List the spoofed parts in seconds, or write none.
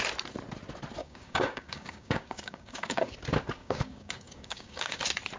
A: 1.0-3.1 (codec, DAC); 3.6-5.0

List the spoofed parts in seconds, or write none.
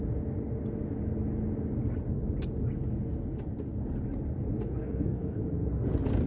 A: 4.8-5.4 (codec, DAC)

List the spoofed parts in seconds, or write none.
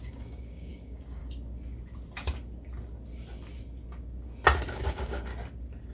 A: 0.0-1.2 (codec, DAC); 4.7-5.3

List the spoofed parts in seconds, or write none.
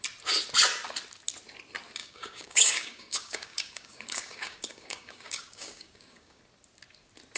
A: 2.0-6.4 (codec, DAC)